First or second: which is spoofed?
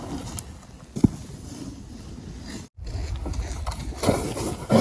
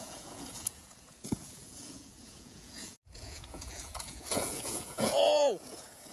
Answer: second